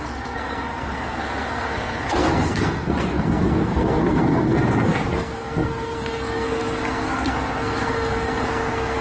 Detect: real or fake fake